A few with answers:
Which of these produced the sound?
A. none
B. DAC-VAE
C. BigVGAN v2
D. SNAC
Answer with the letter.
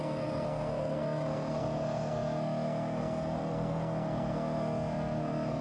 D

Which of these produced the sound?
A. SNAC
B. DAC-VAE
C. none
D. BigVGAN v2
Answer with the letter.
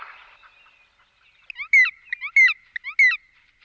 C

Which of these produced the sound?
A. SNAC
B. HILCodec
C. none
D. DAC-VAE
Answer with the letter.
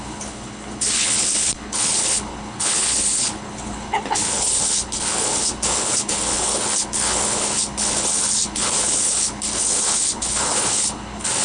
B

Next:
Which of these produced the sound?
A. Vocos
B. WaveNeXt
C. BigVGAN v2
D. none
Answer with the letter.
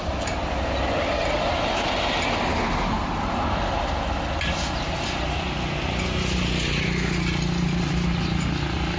D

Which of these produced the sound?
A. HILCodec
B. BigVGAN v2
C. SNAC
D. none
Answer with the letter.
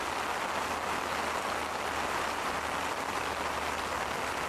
D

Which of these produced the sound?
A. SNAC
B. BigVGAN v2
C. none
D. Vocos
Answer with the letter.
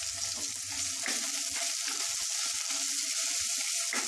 C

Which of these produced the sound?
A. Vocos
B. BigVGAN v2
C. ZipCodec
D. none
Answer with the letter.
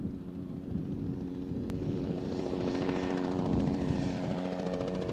B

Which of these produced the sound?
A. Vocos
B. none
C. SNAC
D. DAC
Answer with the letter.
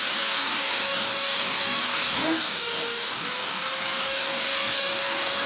D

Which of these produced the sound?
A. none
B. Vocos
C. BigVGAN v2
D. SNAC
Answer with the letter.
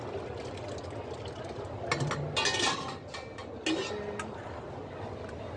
A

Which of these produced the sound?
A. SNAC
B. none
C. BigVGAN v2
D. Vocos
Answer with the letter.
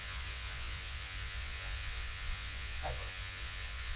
D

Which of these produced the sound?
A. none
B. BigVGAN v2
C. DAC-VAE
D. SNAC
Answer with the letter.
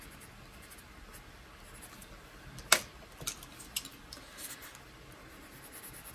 A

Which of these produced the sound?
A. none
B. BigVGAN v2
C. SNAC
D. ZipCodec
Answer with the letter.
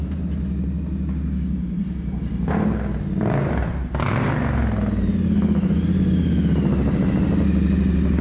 A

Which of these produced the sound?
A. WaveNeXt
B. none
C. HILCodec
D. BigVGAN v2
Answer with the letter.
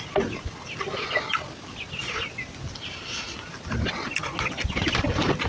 B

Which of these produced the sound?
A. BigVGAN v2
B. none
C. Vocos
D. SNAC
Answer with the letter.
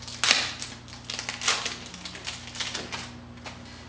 B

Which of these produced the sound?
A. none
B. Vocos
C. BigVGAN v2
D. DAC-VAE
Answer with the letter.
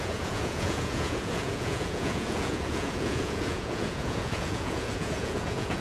B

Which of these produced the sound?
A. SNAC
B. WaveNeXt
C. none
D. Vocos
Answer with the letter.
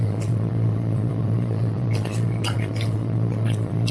D